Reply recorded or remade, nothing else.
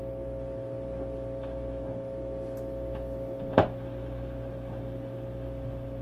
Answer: remade